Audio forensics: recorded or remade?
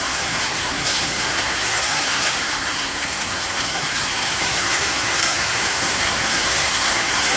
remade